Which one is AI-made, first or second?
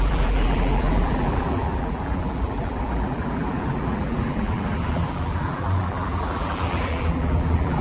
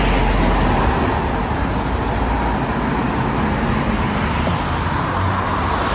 first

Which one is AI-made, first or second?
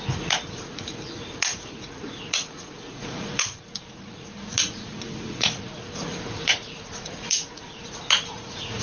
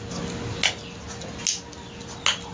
first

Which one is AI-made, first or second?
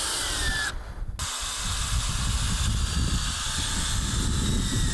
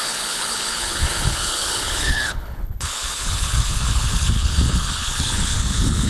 second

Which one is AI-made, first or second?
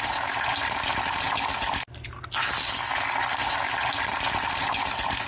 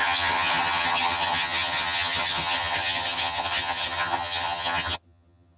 second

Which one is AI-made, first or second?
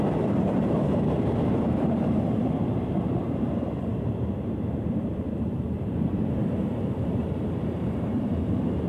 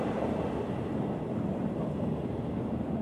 first